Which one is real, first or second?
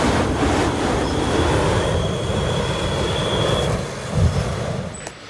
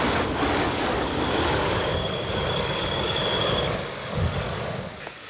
first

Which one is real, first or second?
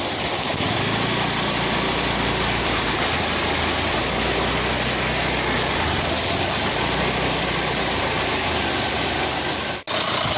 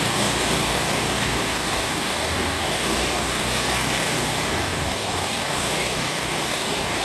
first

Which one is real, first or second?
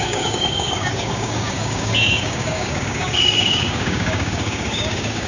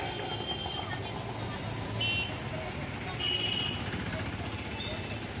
second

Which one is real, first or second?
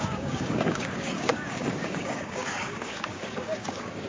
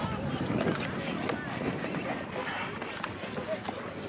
second